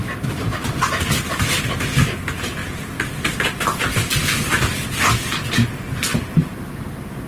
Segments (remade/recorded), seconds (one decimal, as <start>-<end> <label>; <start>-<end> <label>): 0.0-2.2 remade; 2.2-2.6 recorded; 2.6-5.5 remade; 5.5-7.3 recorded